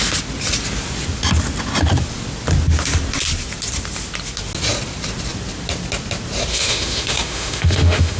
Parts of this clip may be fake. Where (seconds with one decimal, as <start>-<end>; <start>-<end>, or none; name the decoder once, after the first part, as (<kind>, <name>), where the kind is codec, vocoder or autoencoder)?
6.5-8.2 (autoencoder, DAC-VAE)